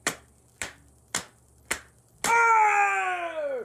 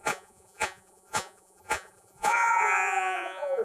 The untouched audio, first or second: first